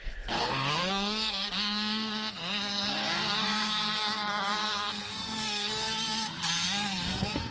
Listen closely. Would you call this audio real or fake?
fake